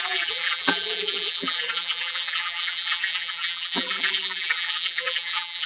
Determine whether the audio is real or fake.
fake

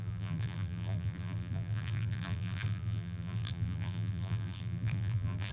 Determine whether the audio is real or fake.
fake